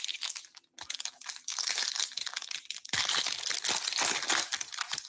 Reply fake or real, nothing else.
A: real